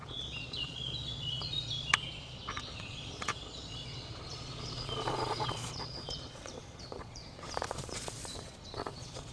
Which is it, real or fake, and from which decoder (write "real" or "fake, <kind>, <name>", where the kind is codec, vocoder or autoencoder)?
fake, vocoder, Vocos